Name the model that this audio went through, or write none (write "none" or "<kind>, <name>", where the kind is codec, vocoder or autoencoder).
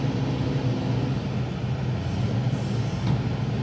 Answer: none